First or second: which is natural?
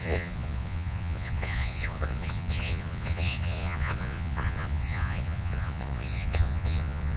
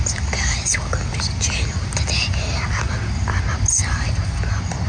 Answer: second